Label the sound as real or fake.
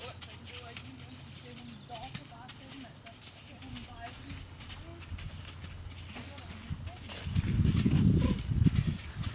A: real